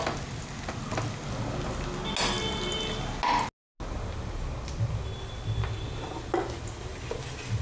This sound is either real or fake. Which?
real